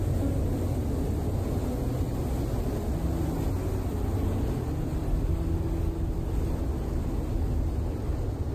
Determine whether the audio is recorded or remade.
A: recorded